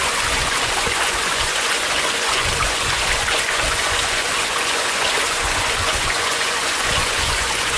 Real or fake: fake